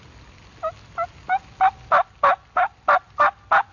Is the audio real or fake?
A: real